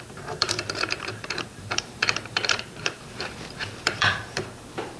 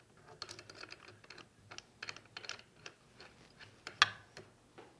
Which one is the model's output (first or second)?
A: first